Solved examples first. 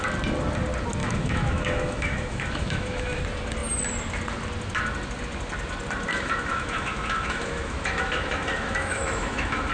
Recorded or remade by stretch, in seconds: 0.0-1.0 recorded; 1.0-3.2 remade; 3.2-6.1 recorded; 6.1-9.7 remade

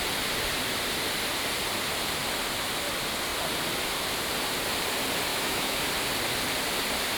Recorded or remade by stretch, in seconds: 0.0-5.3 recorded; 5.3-5.9 remade; 5.9-7.2 recorded

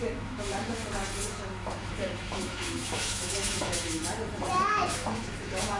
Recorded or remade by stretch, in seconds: 0.0-0.8 remade; 0.8-1.3 recorded; 1.3-4.0 remade; 4.0-4.7 recorded; 4.7-5.8 remade

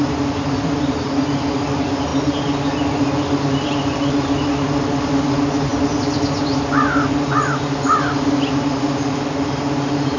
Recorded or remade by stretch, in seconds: 0.0-10.2 recorded

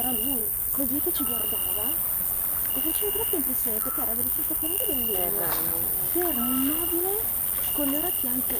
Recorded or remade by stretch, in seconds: 0.0-0.4 recorded; 0.4-0.9 remade; 0.9-2.9 recorded; 2.9-4.9 remade; 4.9-8.6 recorded

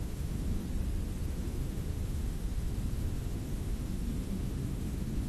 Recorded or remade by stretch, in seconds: 0.0-0.6 remade; 0.6-1.2 recorded; 1.2-5.3 remade

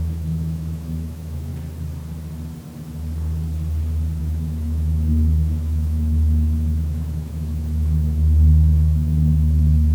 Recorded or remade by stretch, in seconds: 0.0-1.5 remade; 1.5-4.2 recorded; 4.2-9.9 remade